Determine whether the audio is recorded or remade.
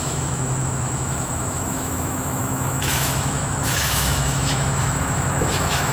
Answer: remade